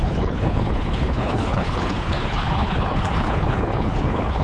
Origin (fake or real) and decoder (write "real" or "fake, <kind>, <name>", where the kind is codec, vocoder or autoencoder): fake, codec, HILCodec